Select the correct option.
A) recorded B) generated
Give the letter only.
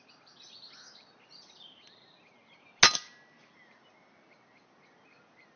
A